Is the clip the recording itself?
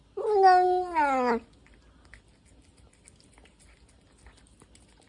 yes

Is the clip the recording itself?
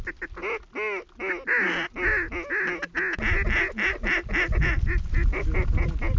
yes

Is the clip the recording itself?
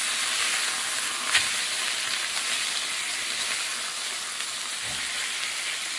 yes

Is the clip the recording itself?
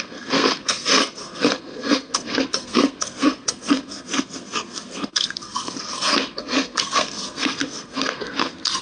no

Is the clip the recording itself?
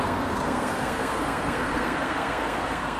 no